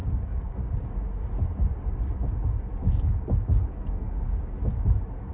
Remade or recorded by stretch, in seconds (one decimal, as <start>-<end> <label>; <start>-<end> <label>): 0.0-0.7 remade; 0.7-2.8 recorded; 2.8-4.5 remade; 4.5-5.3 recorded